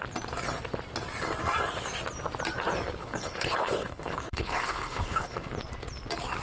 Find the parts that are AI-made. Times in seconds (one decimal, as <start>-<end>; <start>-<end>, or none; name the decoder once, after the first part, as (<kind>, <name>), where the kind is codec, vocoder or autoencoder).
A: 3.0-5.5 (codec, HILCodec)